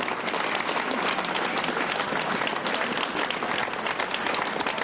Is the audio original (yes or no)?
yes